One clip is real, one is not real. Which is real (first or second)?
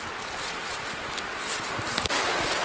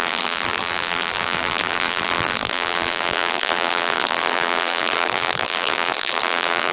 first